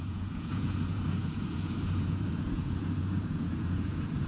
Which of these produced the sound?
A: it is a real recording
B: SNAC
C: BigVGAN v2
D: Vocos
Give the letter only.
D